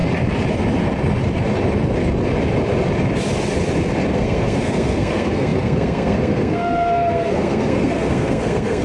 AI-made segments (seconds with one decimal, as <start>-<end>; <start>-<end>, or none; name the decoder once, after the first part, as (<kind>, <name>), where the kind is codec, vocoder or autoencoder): 4.1-8.8 (codec, SNAC)